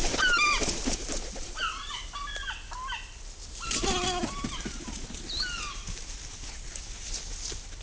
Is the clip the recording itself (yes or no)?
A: yes